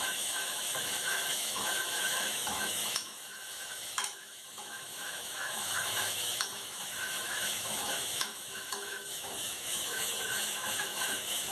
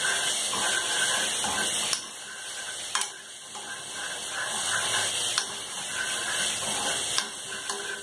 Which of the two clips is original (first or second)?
second